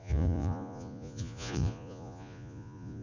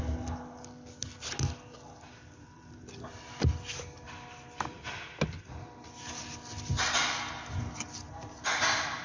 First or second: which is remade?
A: first